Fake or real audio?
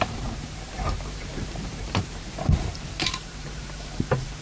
fake